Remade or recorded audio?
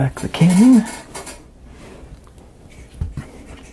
recorded